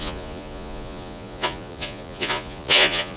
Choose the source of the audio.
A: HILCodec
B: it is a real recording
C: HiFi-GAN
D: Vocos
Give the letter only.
D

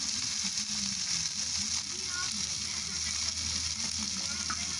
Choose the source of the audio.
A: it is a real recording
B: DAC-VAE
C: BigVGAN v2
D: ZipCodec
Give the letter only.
A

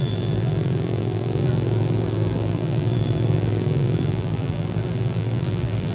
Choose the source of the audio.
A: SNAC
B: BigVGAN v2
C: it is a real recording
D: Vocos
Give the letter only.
B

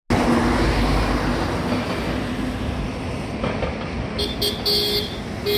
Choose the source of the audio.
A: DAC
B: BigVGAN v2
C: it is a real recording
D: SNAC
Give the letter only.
C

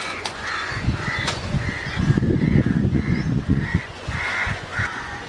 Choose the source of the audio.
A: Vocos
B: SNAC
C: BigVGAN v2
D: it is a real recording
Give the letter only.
A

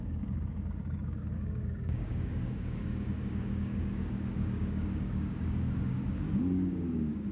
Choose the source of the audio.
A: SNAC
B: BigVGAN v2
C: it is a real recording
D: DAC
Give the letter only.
D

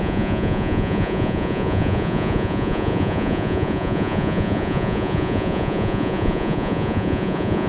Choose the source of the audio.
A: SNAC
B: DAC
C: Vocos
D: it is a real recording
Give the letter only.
C